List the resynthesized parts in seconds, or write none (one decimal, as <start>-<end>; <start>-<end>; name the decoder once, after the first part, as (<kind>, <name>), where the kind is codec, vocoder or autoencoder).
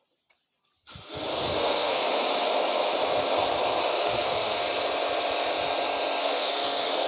1.3-2.0 (codec, SNAC); 3.9-4.6; 6.2-7.1